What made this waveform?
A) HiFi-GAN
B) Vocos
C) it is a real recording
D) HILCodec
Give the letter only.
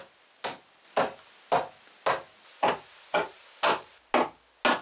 C